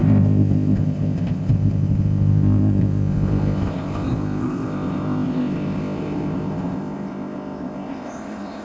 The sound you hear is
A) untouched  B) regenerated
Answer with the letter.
B